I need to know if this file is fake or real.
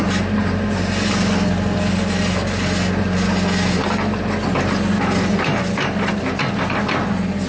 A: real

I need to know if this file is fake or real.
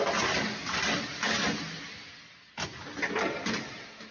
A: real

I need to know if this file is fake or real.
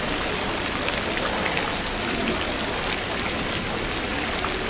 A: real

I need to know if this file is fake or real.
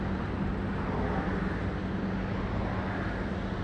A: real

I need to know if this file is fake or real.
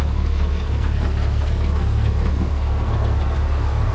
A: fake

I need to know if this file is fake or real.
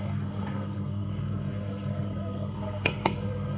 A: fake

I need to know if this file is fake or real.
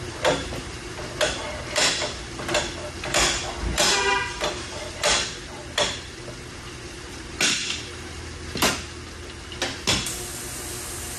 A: real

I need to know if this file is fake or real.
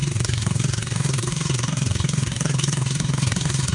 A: fake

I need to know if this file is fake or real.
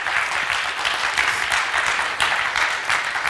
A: real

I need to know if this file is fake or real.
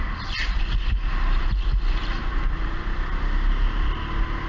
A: fake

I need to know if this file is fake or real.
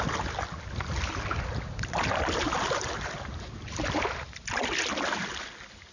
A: real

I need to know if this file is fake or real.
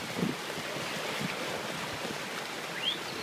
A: real